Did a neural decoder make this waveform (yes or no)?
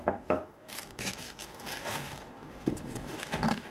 yes